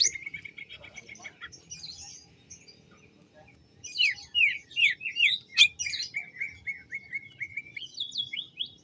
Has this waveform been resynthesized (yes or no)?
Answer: no